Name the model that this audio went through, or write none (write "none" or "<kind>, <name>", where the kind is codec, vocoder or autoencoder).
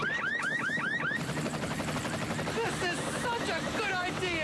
none